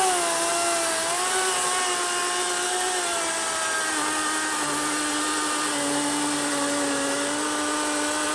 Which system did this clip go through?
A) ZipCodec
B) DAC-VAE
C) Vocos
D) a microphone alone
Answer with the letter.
D